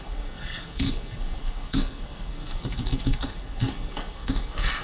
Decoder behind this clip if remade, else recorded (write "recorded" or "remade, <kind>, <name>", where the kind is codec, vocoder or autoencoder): remade, codec, SNAC